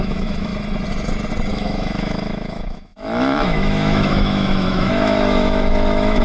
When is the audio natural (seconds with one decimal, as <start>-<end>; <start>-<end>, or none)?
0.5-1.5